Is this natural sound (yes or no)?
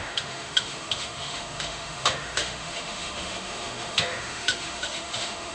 no